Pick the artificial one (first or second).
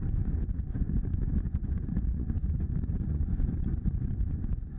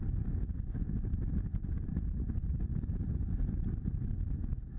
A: first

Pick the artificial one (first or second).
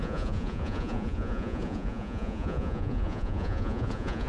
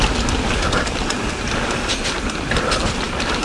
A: first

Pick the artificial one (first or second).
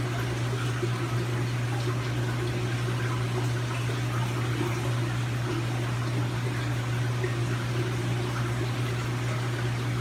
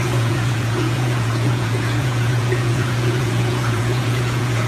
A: second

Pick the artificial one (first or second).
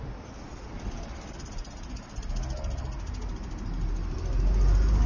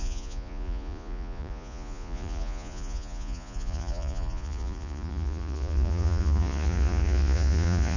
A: second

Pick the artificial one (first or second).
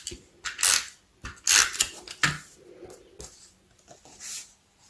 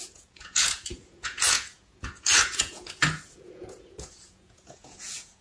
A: second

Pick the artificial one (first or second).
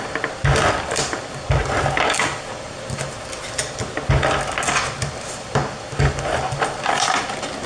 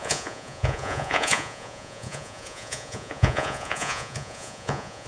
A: second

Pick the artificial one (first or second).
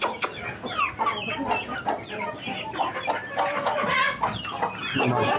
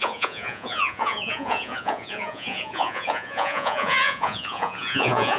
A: second